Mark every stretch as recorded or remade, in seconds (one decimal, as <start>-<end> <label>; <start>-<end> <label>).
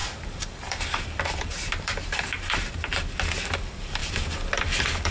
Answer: 0.0-3.1 remade; 3.1-4.0 recorded; 4.0-5.1 remade